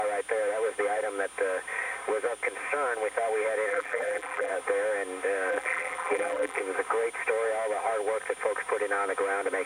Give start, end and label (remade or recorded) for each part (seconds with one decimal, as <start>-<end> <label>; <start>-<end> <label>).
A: 0.0-3.7 recorded; 3.7-4.5 remade; 4.5-5.5 recorded; 5.5-6.6 remade; 6.6-9.7 recorded

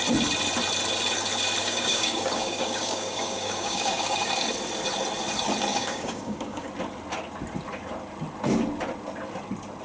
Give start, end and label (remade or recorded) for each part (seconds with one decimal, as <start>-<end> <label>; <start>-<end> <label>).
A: 0.0-1.6 recorded; 1.6-4.3 remade; 4.3-5.7 recorded; 5.7-6.7 remade; 6.7-9.8 recorded

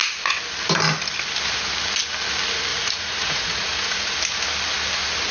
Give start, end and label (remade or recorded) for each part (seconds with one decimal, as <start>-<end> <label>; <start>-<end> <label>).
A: 0.0-2.7 recorded; 2.7-4.0 remade; 4.0-5.3 recorded